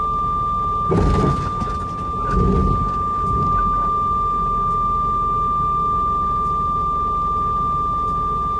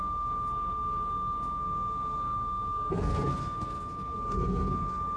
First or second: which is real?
first